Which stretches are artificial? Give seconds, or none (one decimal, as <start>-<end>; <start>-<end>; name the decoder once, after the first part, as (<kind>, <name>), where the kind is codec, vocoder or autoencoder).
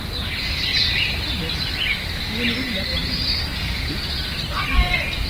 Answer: none